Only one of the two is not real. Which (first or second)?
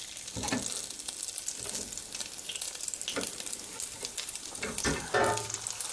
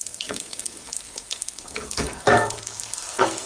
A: second